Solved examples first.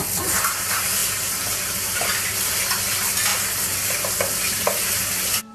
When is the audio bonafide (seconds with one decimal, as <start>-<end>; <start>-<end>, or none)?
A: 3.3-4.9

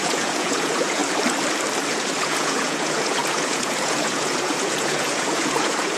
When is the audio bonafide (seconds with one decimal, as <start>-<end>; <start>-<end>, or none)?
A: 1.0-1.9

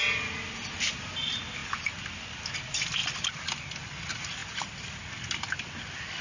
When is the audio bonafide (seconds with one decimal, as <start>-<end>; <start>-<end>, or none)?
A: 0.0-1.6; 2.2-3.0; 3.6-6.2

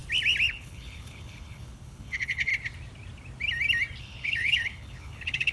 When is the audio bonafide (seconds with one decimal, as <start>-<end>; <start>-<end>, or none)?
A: 0.0-0.5; 2.5-4.0

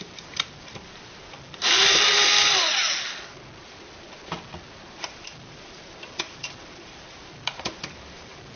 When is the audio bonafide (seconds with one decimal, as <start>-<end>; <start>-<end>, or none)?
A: 2.1-5.0

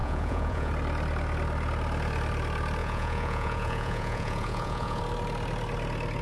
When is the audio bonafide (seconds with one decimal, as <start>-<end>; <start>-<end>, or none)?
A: 0.7-2.8; 5.0-6.2